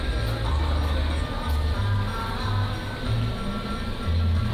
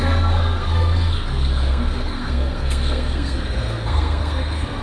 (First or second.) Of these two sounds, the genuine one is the first